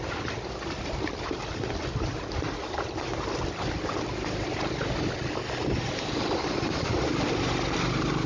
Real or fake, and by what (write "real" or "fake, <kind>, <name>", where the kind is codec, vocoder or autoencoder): real